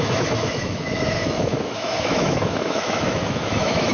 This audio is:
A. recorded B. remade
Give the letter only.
B